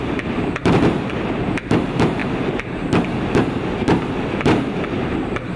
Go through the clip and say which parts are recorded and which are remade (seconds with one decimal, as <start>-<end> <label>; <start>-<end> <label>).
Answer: 0.0-5.6 remade